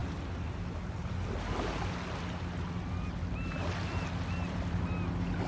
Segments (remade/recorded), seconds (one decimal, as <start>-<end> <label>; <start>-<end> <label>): 0.0-5.5 recorded